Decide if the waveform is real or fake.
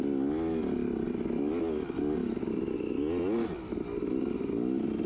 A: real